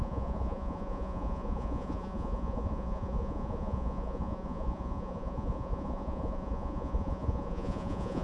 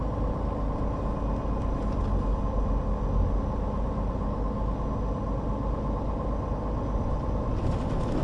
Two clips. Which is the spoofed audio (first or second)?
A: first